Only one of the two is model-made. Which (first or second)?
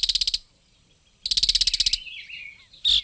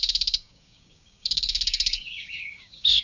second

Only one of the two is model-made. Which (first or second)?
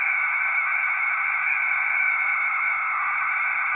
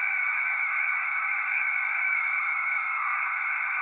second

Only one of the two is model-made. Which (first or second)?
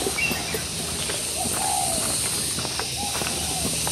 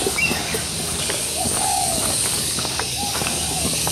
second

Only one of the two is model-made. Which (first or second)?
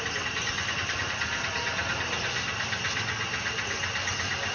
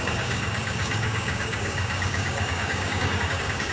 second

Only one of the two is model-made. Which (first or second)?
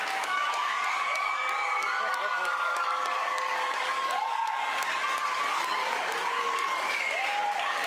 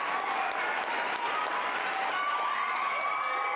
first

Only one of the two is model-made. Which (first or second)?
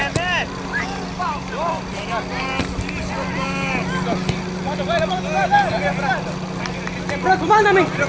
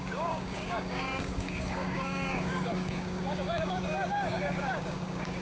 second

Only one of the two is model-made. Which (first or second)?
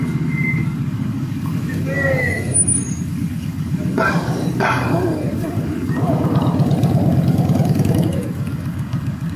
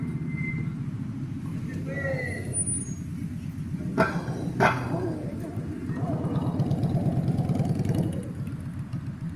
first